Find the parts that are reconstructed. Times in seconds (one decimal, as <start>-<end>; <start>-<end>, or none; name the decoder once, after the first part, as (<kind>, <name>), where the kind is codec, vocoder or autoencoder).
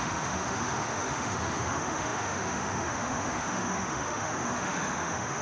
0.0-5.4 (autoencoder, DAC-VAE)